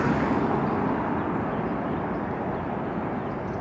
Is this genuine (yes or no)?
yes